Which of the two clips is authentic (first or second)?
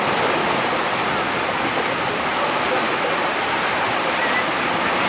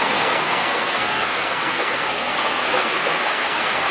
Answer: first